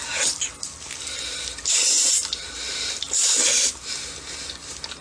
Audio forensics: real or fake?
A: real